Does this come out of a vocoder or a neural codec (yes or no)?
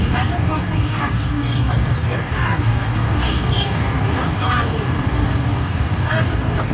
yes